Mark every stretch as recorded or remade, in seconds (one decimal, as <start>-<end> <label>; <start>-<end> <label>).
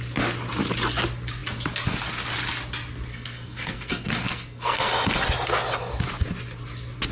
0.0-3.1 recorded; 3.1-4.9 remade; 4.9-7.1 recorded